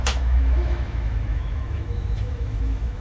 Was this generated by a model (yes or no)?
yes